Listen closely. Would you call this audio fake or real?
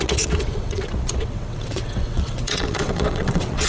fake